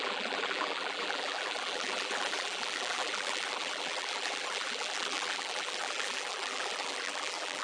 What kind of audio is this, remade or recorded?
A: remade